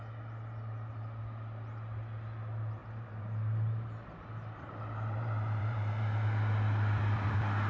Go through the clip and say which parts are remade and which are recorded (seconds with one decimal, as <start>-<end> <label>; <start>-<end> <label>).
0.0-2.8 recorded; 2.8-6.1 remade; 6.1-7.7 recorded